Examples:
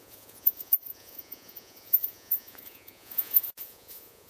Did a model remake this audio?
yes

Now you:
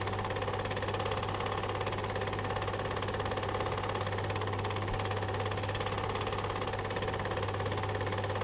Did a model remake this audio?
no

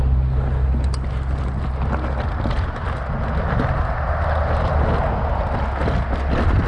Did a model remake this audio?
no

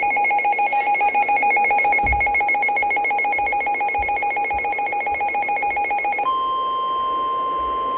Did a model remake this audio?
no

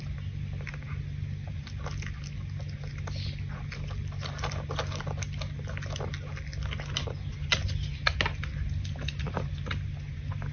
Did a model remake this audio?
no